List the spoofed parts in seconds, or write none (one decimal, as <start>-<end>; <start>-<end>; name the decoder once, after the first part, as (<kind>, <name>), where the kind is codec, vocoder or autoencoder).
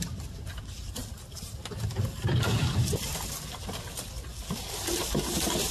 none